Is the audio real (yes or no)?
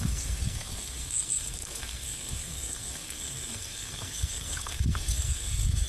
no